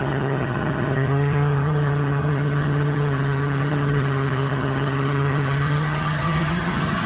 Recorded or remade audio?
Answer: remade